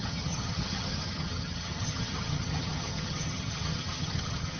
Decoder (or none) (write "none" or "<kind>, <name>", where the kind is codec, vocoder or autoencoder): vocoder, HiFi-GAN